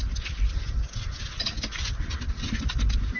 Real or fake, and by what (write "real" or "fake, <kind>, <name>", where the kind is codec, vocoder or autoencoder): real